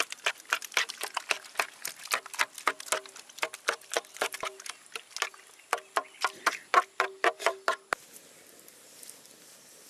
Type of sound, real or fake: real